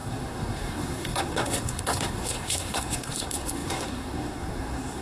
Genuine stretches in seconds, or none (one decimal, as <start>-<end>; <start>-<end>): none